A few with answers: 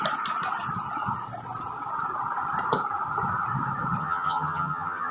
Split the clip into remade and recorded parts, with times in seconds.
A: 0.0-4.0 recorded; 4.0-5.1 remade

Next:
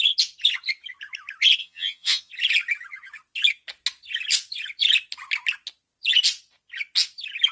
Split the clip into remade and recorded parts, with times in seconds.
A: 0.0-1.6 recorded; 1.6-2.3 remade; 2.3-7.5 recorded

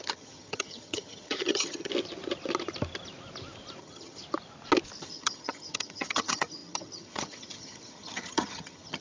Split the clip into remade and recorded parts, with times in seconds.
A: 0.0-1.9 remade; 1.9-3.8 recorded; 3.8-4.2 remade; 4.2-5.0 recorded; 5.0-9.0 remade

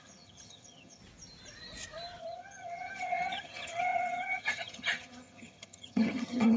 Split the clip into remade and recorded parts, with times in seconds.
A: 0.0-1.0 remade; 1.0-2.2 recorded; 2.2-6.6 remade

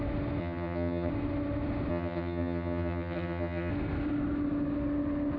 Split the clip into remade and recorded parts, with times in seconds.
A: 0.0-0.4 recorded; 0.4-1.1 remade; 1.1-1.9 recorded; 1.9-3.7 remade; 3.7-5.4 recorded

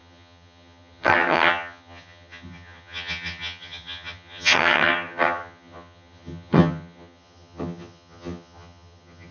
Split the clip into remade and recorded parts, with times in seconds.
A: 0.0-9.3 remade

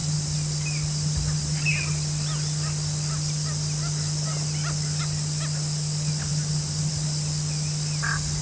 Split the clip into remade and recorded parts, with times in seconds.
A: 0.0-8.4 recorded